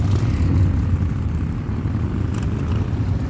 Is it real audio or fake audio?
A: real